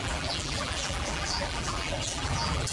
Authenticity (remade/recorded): remade